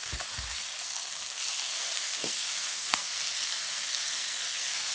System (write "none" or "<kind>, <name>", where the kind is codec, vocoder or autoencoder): codec, SNAC